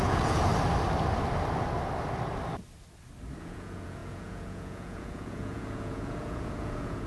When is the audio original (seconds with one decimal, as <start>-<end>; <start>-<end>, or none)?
0.5-3.4